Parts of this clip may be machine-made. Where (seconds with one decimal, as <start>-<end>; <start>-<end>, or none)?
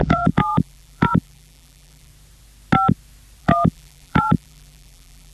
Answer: 0.0-2.1; 3.4-5.3